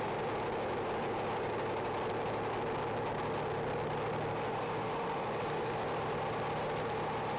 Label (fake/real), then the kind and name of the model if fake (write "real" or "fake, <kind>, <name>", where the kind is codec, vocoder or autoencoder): real